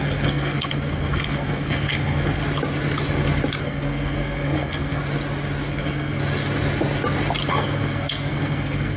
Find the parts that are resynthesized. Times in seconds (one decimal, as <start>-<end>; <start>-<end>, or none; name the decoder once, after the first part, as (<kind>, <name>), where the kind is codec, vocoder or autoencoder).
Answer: 0.0-2.4 (codec, SNAC); 3.6-5.0; 5.7-6.2; 7.5-9.0